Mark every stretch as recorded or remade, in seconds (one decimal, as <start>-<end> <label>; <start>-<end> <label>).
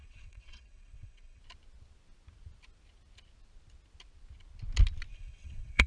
0.0-1.4 remade; 1.4-5.1 recorded; 5.1-5.9 remade